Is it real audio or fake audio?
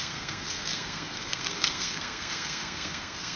fake